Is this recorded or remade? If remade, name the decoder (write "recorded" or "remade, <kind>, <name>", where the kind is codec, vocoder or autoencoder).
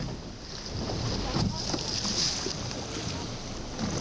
recorded